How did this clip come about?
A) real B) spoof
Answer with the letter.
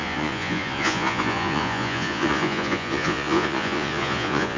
B